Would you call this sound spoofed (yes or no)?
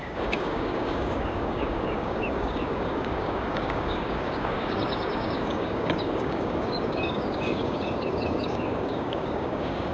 yes